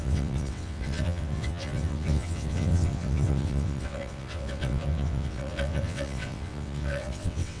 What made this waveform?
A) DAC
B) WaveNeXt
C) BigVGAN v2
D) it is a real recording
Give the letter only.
B